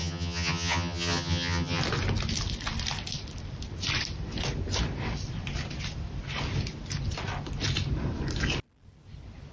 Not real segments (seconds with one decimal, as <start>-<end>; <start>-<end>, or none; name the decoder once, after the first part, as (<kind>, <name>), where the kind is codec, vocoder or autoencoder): 0.0-1.8 (vocoder, HiFi-GAN)